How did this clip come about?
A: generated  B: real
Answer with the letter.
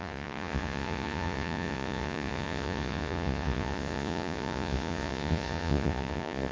A